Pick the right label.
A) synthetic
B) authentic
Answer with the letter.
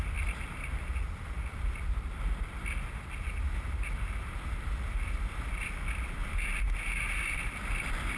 B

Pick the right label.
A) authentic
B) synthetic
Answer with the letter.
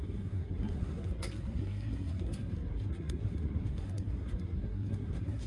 B